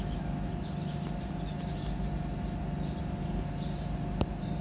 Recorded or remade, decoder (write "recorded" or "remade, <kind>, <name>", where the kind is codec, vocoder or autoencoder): recorded